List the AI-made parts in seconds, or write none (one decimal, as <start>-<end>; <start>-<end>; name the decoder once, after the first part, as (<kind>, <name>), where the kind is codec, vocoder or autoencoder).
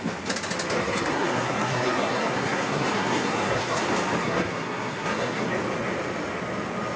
0.8-3.8 (codec, SNAC); 4.2-5.5